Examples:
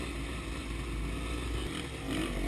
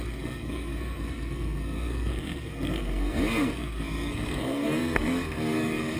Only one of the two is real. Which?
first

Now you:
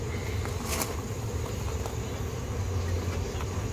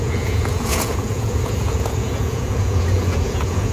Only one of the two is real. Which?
first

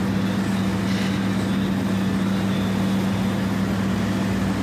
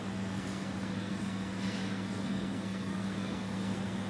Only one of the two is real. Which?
first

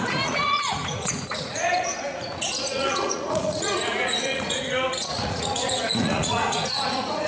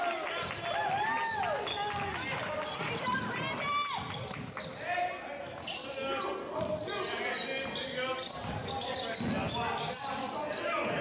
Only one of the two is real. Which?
second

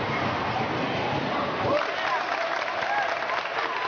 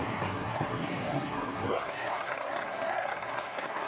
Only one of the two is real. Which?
first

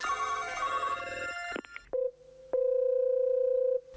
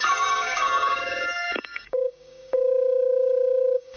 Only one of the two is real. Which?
first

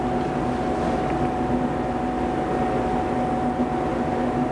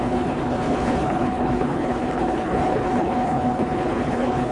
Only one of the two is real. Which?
first